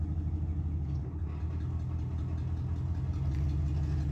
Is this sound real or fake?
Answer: real